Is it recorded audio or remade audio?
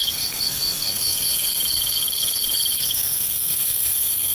remade